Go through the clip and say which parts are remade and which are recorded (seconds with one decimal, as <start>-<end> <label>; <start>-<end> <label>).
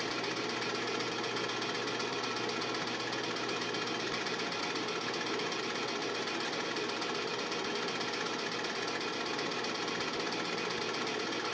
0.0-11.5 recorded